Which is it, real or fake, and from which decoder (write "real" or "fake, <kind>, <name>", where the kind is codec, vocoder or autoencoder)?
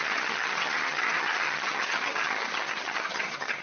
fake, vocoder, HiFi-GAN